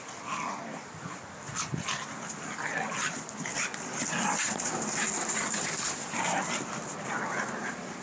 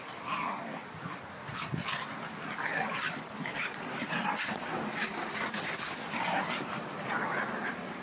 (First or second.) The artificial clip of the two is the second